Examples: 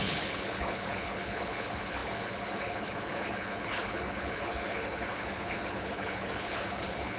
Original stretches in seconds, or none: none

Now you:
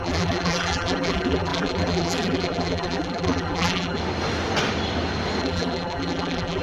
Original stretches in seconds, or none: 4.0-5.4

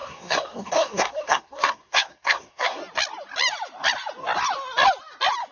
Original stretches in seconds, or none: 2.8-5.5

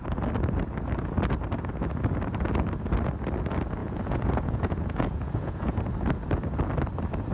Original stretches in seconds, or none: 0.0-3.8; 5.8-7.3

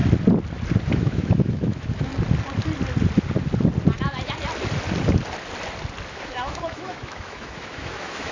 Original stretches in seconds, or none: 0.0-0.9; 2.1-6.1